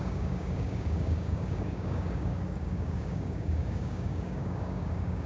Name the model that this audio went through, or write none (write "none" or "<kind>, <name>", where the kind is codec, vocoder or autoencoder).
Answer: codec, DAC